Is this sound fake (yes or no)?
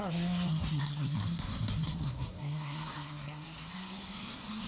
yes